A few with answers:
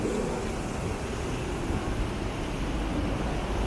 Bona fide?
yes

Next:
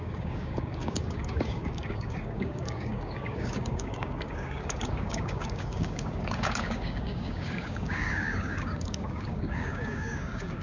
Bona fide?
no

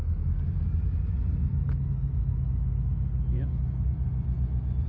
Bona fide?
yes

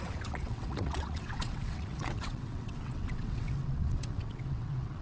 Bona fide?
no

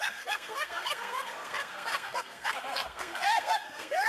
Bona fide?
no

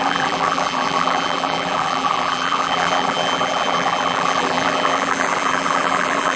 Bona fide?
no